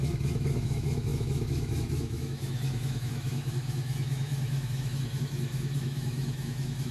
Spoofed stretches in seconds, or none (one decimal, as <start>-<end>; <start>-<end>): 0.0-6.9